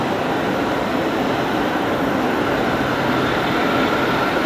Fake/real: real